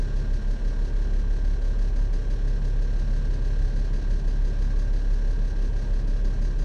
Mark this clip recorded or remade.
recorded